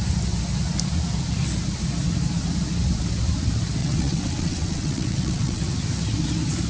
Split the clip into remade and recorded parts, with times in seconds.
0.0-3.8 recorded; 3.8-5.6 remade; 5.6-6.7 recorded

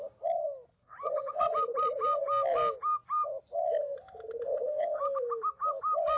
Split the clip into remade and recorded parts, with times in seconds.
0.0-0.7 recorded; 0.7-1.5 remade; 1.5-4.5 recorded; 4.5-5.0 remade; 5.0-6.2 recorded

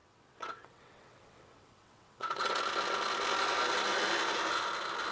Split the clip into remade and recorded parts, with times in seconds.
0.0-2.6 remade; 2.6-5.1 recorded